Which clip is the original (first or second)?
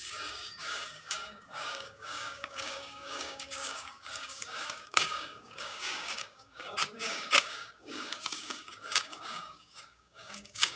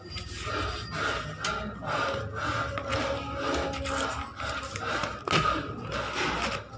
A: second